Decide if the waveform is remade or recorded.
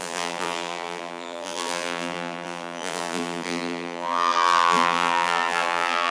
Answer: remade